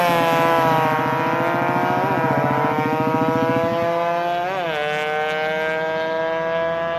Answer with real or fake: real